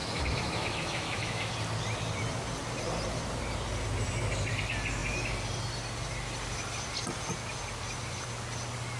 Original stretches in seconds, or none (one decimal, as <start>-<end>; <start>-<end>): 1.5-9.0